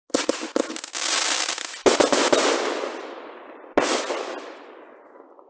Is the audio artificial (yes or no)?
no